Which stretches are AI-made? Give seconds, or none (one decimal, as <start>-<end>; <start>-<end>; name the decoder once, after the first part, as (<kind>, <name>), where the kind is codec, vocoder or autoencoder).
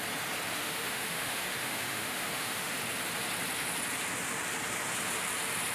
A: 0.5-2.7 (autoencoder, DAC-VAE)